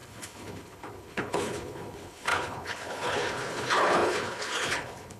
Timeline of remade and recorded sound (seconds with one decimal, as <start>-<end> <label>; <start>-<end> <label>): 0.0-5.2 remade